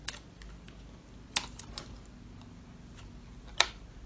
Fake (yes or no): no